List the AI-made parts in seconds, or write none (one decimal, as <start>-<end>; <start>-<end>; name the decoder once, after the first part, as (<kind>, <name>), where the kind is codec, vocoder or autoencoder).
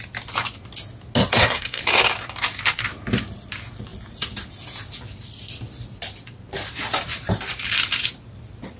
1.3-1.8 (codec, SNAC)